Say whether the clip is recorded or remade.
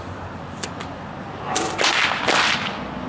recorded